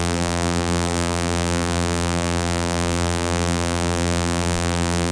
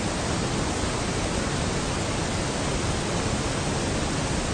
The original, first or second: second